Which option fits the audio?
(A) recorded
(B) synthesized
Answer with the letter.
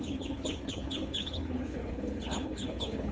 B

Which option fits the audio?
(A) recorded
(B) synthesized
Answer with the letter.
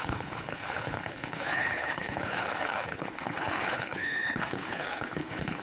B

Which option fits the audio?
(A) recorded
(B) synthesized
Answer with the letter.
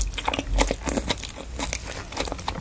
A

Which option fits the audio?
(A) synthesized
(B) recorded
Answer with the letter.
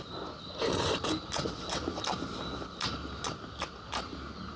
B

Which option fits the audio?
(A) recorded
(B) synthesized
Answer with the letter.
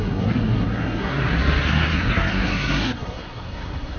B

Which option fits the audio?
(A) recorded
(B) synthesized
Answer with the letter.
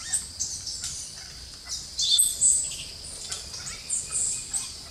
A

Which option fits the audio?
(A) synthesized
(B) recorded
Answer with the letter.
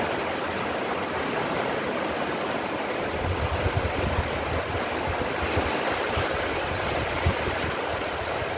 B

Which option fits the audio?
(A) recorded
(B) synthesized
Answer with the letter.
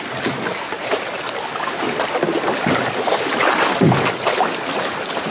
A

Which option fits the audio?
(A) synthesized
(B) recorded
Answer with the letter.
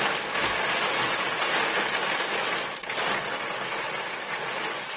B